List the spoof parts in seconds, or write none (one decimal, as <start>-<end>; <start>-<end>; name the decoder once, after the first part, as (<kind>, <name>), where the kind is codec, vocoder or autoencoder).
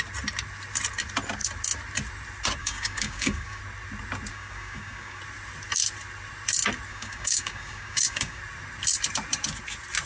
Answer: 2.6-3.6 (codec, DAC); 4.3-5.2; 6.9-8.4